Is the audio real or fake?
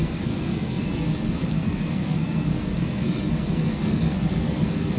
fake